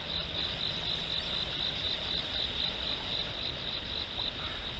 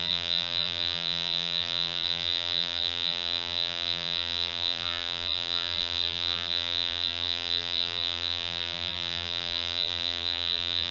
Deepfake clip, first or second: second